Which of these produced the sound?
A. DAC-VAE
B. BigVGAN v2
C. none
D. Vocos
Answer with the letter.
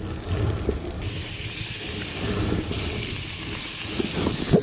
C